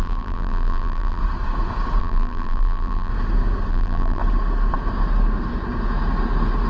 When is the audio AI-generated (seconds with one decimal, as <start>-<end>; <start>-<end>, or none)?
0.0-1.2; 2.0-3.1; 3.7-4.2